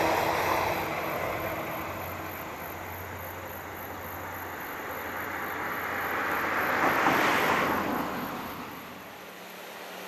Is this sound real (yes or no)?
yes